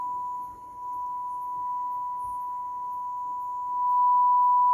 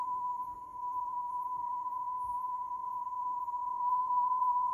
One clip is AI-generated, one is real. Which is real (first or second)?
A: first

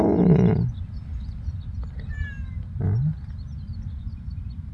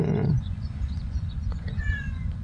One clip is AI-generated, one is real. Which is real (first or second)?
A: first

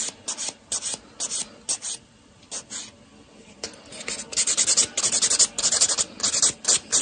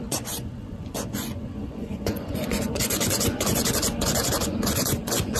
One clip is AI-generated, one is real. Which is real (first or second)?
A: first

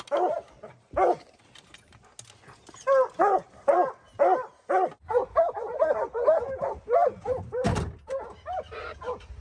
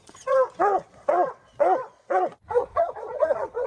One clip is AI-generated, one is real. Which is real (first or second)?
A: first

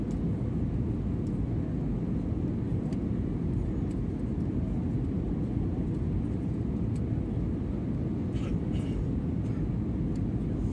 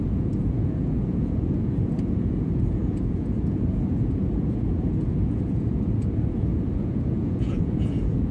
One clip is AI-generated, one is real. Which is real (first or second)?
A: first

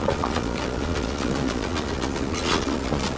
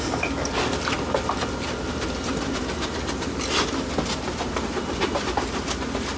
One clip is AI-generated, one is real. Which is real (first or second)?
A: second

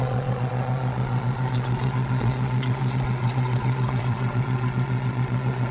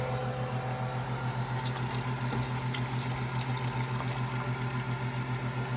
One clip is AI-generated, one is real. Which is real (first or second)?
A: second